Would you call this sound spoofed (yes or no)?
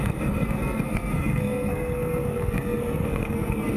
yes